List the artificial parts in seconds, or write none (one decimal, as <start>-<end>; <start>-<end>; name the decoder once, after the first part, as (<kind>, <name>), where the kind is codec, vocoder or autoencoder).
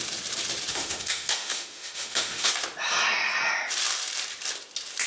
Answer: 0.7-2.5 (autoencoder, DAC-VAE)